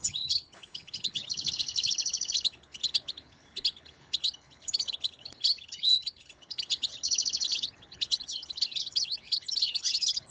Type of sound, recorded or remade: remade